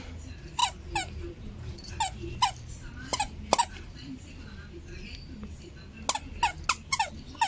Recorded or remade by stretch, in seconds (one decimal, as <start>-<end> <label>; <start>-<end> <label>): 0.0-0.6 recorded; 0.6-1.9 remade; 1.9-3.1 recorded; 3.1-4.3 remade; 4.3-7.5 recorded

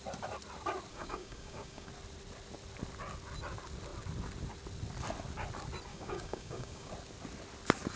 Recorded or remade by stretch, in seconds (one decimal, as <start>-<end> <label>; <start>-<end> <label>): 0.0-0.9 recorded; 0.9-1.9 remade; 1.9-5.9 recorded; 5.9-6.9 remade; 6.9-8.0 recorded

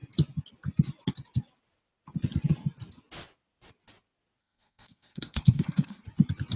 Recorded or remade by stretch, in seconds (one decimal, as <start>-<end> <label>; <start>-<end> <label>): 0.0-4.4 recorded; 4.4-6.0 remade; 6.0-6.6 recorded

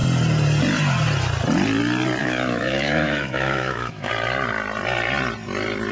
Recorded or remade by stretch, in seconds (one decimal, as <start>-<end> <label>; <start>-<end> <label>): 0.0-2.2 recorded; 2.2-4.1 remade; 4.1-5.9 recorded

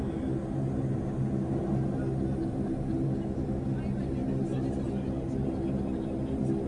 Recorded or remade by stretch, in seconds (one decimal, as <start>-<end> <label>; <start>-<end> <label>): 0.0-6.7 recorded